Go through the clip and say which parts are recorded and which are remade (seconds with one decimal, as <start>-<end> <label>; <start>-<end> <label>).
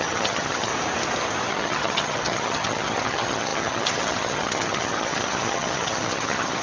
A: 0.0-0.7 remade; 0.7-1.5 recorded; 1.5-6.6 remade